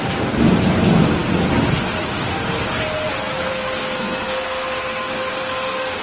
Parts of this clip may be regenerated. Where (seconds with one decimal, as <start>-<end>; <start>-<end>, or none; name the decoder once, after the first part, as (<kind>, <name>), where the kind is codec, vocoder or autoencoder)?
3.5-6.0 (codec, SNAC)